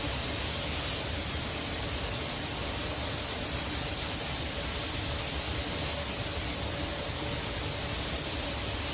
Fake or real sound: real